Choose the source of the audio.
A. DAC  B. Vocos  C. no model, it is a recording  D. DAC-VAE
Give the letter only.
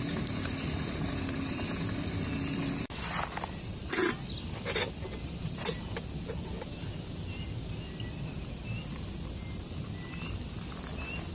C